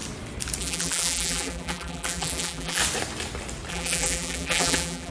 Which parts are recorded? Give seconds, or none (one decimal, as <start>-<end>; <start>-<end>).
0.0-0.6; 2.8-3.7